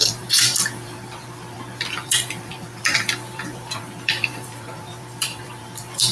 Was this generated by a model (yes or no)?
yes